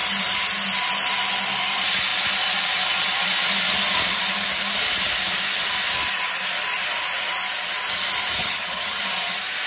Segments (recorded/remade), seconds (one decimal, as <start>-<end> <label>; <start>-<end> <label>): 0.0-8.4 recorded; 8.4-9.0 remade; 9.0-9.7 recorded